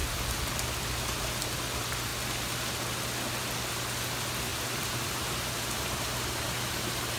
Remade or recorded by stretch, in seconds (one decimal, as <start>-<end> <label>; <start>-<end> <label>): 0.0-4.5 recorded; 4.5-7.2 remade